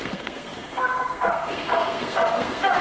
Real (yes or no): no